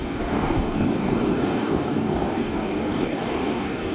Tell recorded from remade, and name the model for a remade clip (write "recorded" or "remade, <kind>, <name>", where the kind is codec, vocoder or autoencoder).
remade, codec, DAC